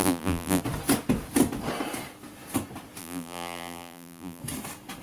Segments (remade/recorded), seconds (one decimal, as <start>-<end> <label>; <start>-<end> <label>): 0.0-0.6 remade; 0.6-3.0 recorded; 3.0-4.4 remade; 4.4-5.0 recorded